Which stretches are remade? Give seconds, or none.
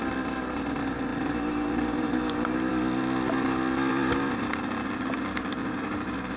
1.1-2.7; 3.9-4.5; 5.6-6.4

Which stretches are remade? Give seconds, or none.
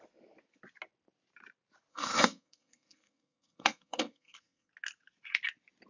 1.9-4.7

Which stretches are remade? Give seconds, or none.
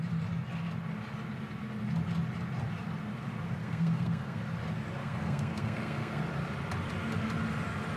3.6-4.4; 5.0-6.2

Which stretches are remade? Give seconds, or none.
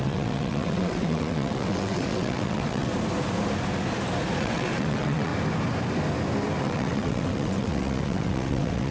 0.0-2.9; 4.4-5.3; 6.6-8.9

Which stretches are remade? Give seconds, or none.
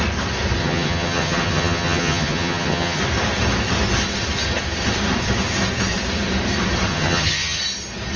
0.6-3.0; 6.9-7.6